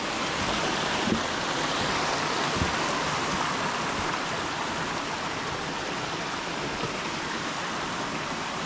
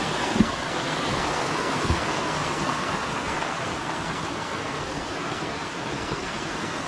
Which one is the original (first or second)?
first